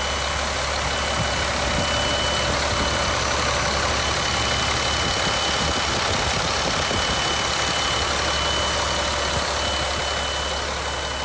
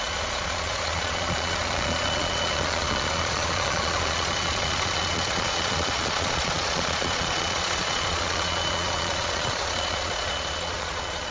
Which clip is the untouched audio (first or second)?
first